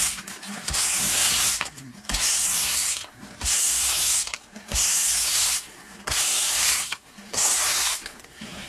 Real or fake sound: fake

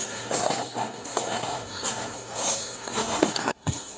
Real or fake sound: fake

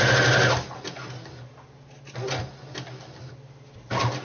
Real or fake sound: real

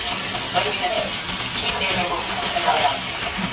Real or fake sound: real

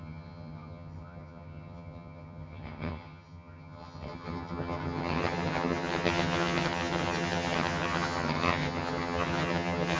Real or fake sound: fake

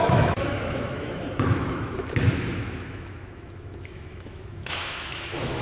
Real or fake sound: fake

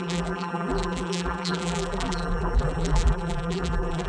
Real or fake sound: fake